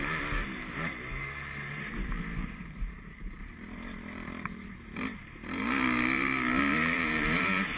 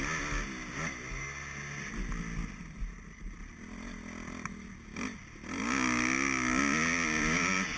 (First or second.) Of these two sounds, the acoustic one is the second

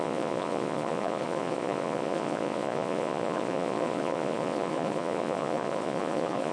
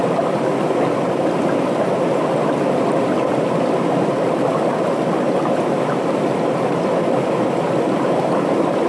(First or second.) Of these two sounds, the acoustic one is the second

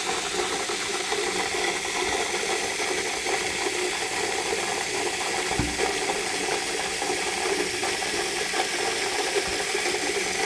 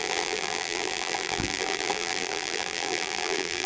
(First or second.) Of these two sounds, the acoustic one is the first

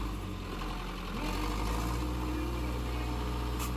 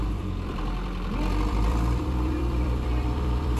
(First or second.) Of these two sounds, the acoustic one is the first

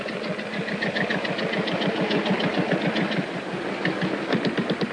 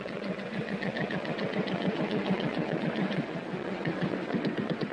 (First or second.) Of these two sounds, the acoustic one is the first